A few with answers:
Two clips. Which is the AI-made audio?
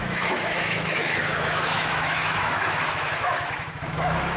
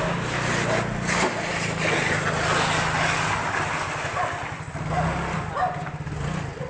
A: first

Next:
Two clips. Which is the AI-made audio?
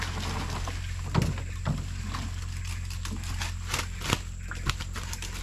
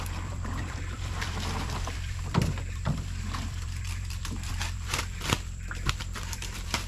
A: second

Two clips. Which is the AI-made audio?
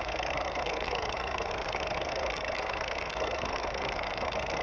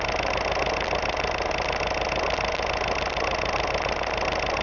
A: first